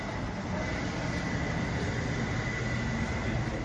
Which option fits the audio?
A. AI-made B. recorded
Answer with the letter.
B